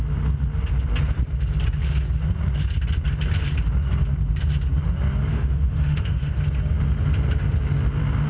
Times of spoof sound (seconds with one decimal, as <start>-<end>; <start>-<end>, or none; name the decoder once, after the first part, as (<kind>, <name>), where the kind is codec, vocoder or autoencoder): 5.3-6.3 (autoencoder, DAC-VAE)